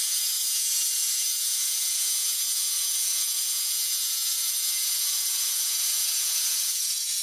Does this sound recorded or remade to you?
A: remade